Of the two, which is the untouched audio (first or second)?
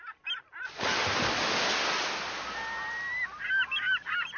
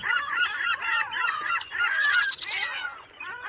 first